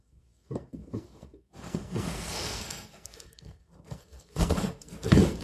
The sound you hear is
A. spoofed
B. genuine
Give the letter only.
A